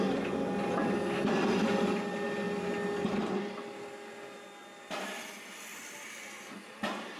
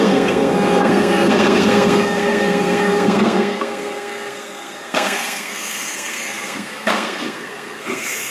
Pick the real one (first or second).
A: first